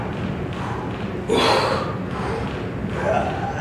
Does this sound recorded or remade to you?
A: recorded